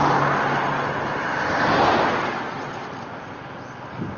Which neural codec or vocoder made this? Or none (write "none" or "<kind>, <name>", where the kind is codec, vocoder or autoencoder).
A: none